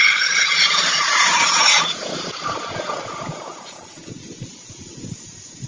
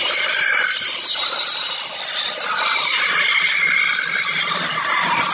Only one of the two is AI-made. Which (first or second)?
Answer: first